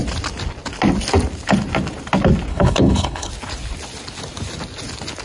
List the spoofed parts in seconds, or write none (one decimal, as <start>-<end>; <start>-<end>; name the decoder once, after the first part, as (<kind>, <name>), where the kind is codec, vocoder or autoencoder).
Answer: 2.5-3.3 (codec, HILCodec)